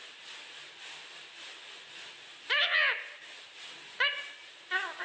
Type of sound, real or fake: real